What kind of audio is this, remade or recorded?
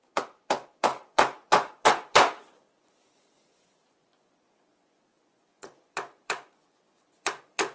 remade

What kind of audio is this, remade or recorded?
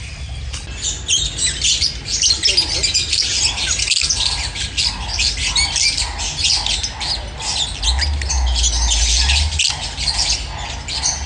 recorded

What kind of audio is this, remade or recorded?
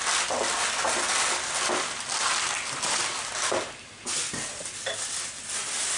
recorded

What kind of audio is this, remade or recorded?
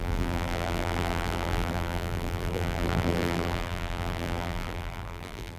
remade